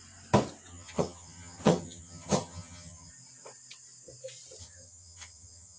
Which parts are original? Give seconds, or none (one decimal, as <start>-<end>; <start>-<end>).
0.0-0.7; 3.1-4.6

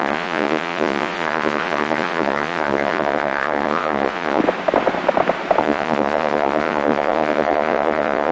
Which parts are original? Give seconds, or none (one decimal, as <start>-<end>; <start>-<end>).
4.4-5.6